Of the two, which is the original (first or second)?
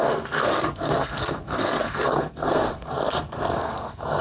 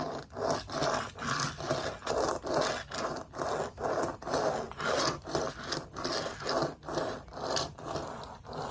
second